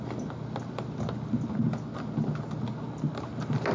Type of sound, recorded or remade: recorded